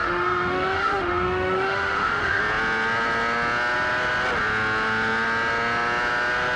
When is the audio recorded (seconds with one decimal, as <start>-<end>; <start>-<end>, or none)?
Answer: 2.4-6.6